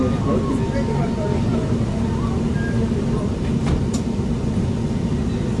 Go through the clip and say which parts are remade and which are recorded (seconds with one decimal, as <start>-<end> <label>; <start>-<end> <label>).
0.0-5.6 recorded